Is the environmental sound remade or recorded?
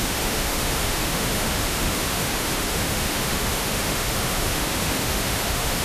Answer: remade